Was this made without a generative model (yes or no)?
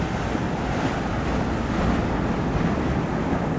yes